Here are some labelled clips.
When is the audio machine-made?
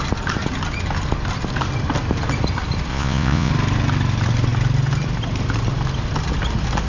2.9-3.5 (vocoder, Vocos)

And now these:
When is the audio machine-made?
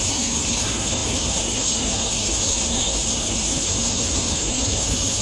0.0-5.2 (codec, SNAC)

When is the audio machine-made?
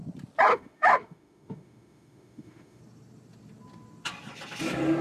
0.5-2.8 (autoencoder, DAC-VAE)